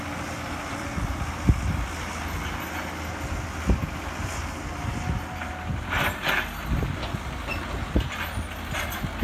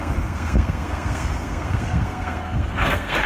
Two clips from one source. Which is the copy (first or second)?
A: second